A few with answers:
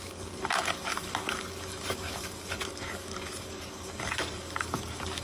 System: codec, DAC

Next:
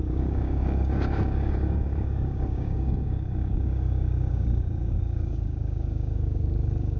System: codec, DAC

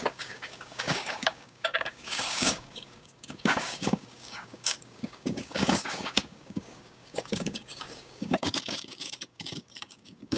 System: codec, DAC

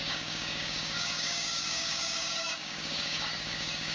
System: codec, DAC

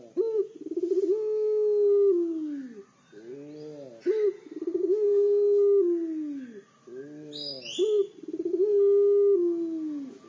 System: none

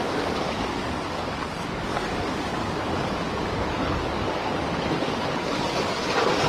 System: codec, DAC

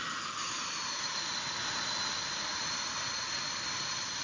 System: none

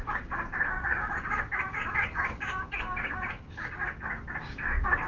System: codec, DAC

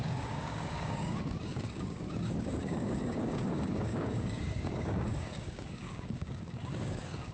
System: codec, DAC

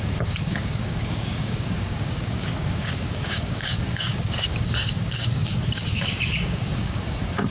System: codec, DAC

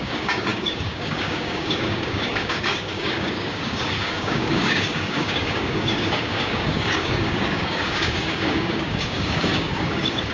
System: codec, DAC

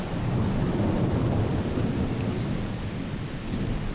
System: none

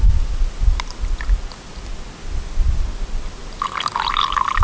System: none